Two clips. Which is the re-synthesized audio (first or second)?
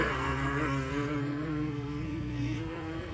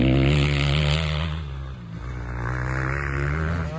first